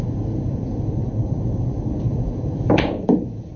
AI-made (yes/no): yes